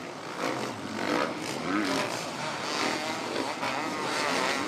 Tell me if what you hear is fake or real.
real